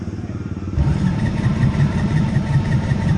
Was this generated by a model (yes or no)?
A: yes